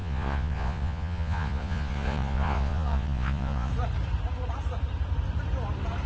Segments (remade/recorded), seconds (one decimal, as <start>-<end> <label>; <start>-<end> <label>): 0.0-3.7 remade; 3.7-6.1 recorded